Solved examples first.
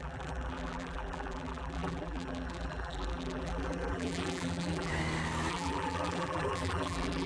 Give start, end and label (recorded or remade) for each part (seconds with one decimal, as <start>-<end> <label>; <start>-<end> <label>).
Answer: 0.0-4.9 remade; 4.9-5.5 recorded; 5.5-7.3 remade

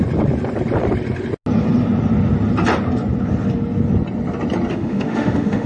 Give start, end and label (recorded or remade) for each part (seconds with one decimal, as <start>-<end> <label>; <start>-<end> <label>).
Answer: 0.0-4.7 recorded; 4.7-5.7 remade

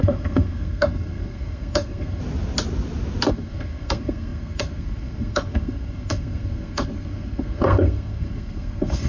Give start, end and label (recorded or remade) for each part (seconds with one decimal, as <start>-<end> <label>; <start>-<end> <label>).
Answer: 0.0-2.2 remade; 2.2-3.3 recorded; 3.3-9.1 remade

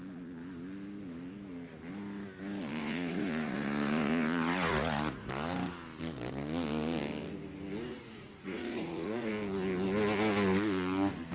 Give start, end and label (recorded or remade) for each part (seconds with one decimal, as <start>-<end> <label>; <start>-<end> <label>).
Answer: 0.0-2.8 recorded; 2.8-5.3 remade; 5.3-7.9 recorded; 7.9-9.3 remade; 9.3-11.3 recorded